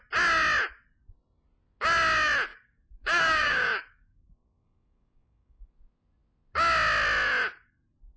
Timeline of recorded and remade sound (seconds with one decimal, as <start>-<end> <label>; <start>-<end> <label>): 0.0-2.5 recorded; 2.5-5.7 remade; 5.7-8.2 recorded